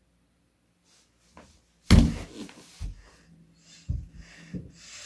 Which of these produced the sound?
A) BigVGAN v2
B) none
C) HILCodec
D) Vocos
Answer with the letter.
B